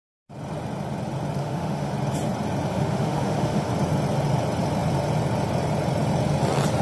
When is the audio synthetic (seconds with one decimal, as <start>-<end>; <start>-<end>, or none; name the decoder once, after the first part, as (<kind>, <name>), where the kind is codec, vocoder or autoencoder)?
1.4-1.9 (autoencoder, DAC-VAE); 2.7-3.7